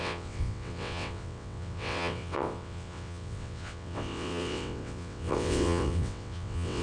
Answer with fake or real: fake